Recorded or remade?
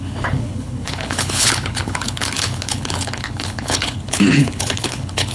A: remade